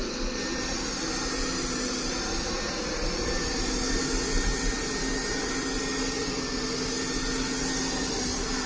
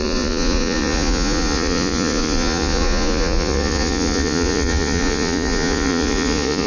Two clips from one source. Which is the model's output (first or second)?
second